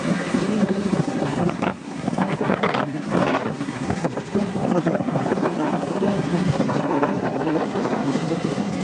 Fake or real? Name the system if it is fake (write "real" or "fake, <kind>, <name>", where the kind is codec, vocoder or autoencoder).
fake, codec, SNAC